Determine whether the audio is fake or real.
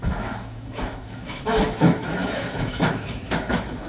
fake